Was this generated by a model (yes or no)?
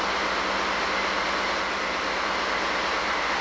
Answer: no